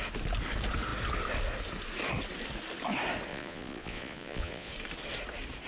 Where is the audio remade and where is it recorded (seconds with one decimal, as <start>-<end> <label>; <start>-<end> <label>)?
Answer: 0.0-3.3 recorded; 3.3-4.7 remade; 4.7-5.7 recorded